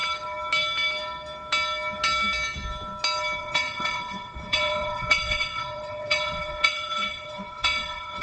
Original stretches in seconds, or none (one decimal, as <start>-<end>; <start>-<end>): 0.0-3.4